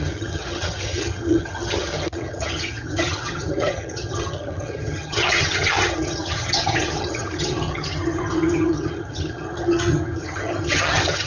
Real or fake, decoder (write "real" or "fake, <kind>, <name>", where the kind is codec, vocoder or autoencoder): fake, vocoder, HiFi-GAN